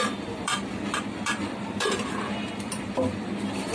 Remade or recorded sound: remade